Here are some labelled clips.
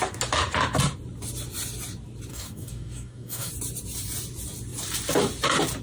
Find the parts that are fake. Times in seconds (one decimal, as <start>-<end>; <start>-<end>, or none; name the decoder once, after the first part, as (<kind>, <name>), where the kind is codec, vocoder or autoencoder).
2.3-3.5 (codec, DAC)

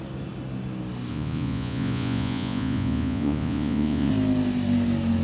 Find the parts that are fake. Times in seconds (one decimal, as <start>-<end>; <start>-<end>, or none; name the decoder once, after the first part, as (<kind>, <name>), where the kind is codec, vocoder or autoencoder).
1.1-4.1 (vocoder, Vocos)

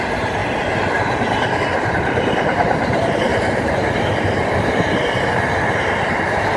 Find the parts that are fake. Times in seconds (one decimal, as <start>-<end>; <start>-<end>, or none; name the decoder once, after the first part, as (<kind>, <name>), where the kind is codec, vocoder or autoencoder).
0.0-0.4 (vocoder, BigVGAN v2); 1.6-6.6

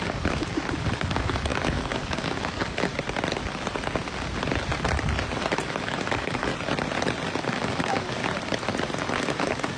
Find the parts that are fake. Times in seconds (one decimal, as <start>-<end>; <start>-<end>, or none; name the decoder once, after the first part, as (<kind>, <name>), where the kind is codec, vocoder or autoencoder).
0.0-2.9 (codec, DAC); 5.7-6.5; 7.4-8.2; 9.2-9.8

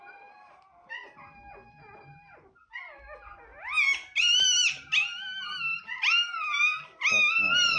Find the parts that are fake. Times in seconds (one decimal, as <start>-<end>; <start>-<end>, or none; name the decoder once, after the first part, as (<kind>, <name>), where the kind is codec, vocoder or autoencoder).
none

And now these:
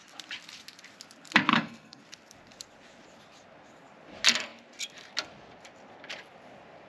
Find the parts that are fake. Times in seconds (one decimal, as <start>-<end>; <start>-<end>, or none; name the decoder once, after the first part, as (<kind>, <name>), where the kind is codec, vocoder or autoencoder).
1.5-2.0 (codec, SNAC)

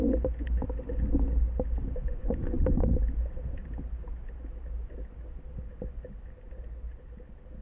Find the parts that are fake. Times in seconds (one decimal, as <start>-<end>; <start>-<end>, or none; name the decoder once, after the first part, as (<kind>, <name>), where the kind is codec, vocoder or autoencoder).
2.1-2.9 (vocoder, Vocos)

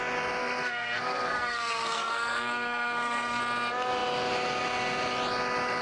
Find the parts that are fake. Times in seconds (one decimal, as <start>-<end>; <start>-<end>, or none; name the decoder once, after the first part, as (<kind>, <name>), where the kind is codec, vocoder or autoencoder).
0.4-3.4 (codec, SNAC)